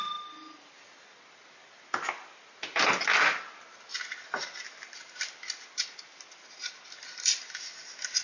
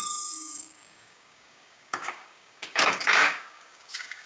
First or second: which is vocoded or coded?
second